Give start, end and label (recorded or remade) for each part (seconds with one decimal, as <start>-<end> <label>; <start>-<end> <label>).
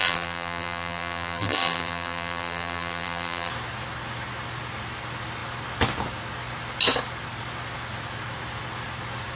0.0-3.5 remade; 3.5-9.3 recorded